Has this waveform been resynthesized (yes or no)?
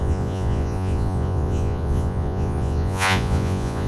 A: yes